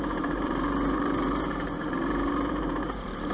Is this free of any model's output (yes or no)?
no